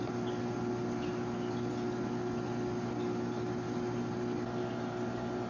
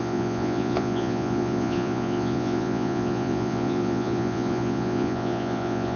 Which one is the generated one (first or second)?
second